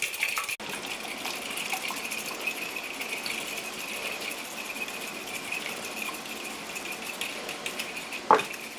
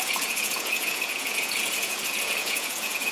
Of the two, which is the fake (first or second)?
second